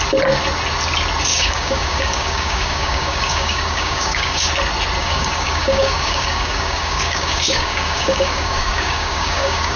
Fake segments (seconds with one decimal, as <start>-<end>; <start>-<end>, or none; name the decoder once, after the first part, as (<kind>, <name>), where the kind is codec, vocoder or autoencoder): 1.3-4.5 (codec, DAC); 5.0-9.8